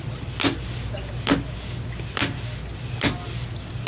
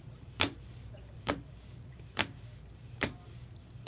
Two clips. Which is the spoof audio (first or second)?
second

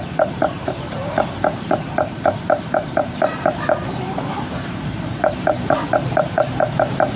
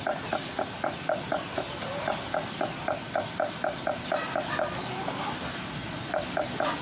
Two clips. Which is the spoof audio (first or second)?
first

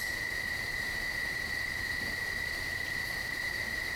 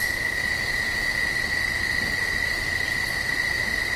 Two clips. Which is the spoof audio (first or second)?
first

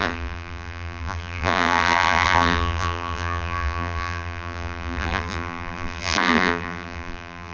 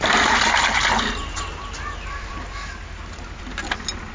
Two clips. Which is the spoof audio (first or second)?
first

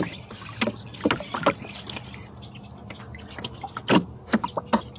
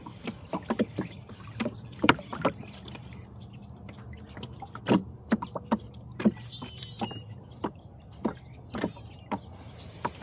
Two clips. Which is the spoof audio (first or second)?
second